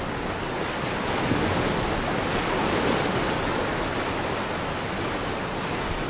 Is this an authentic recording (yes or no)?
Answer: yes